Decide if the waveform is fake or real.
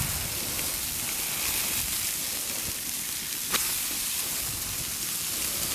real